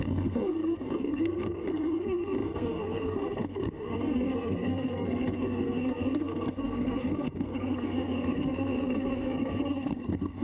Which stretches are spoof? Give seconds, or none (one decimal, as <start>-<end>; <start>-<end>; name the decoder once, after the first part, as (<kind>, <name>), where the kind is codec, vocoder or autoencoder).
0.0-10.4 (codec, SNAC)